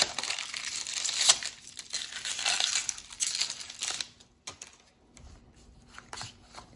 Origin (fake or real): real